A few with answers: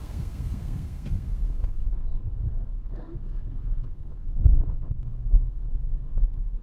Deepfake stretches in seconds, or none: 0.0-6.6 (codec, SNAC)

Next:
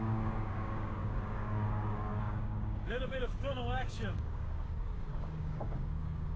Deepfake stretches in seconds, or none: 0.0-6.4 (codec, DAC)

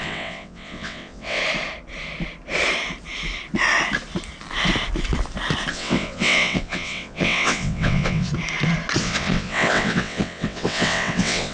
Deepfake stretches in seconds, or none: 0.0-1.4 (vocoder, WaveNeXt); 5.7-8.3; 9.0-11.5

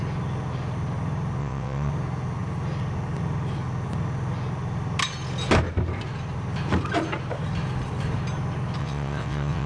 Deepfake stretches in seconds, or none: 1.4-1.9 (vocoder, WaveNeXt); 8.8-9.7

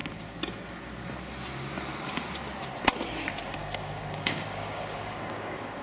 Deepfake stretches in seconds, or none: 3.5-5.8 (codec, DAC)

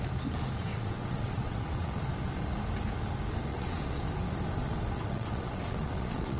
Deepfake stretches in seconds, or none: 0.7-2.0 (vocoder, WaveNeXt); 3.5-4.0; 4.6-6.4

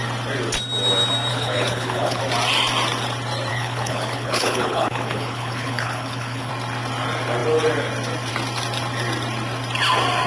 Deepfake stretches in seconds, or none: 1.3-2.2 (codec, HILCodec); 3.5-6.5